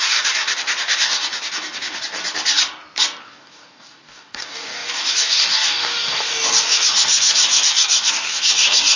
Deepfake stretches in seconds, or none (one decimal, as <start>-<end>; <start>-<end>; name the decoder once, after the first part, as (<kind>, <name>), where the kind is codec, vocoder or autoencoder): 0.0-2.2 (codec, DAC); 3.2-9.0